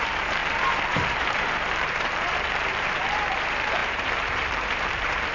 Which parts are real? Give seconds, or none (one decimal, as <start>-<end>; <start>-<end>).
none